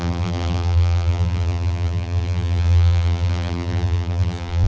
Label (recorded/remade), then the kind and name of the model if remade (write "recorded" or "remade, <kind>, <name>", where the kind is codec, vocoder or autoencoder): remade, vocoder, BigVGAN v2